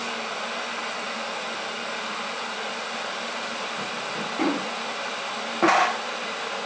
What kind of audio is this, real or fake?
real